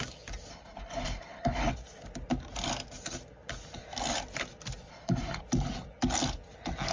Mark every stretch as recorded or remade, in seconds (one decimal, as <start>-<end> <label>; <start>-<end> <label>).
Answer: 0.0-0.5 recorded; 0.5-1.7 remade; 1.7-4.9 recorded; 4.9-5.4 remade; 5.4-6.9 recorded